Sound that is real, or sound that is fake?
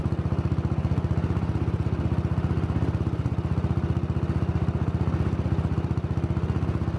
real